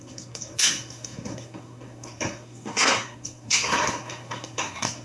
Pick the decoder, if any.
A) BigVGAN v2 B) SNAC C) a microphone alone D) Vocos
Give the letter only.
B